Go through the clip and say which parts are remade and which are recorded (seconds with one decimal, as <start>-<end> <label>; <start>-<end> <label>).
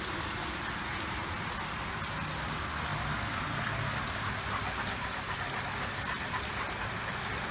0.0-7.5 recorded